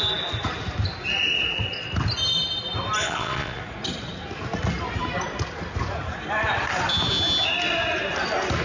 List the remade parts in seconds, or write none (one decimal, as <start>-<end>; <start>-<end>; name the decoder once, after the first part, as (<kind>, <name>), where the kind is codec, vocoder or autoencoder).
3.0-3.6 (vocoder, Vocos)

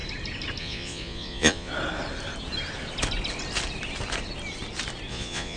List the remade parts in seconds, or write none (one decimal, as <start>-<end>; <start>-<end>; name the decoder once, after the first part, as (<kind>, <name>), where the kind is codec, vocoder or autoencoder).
0.6-1.7 (vocoder, Vocos); 5.1-5.6

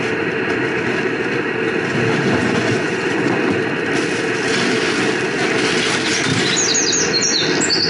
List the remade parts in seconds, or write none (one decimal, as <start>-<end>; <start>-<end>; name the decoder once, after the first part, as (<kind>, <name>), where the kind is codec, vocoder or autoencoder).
2.4-3.4 (vocoder, Vocos)

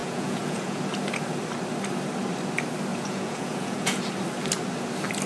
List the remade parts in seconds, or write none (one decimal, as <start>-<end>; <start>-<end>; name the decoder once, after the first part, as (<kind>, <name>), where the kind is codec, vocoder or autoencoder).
0.0-0.8 (vocoder, Vocos); 2.9-4.0

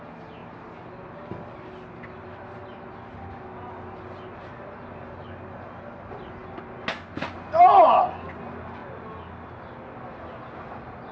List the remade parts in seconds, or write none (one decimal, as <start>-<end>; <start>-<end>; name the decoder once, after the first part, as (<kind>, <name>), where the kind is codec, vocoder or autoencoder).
none